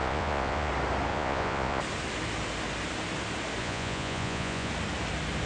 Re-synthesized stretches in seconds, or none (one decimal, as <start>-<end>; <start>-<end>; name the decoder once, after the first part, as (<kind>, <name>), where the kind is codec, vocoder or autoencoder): 0.0-0.7 (vocoder, Vocos); 1.1-1.8; 3.6-4.7